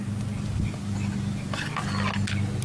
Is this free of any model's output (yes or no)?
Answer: yes